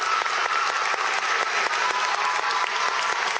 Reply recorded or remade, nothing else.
recorded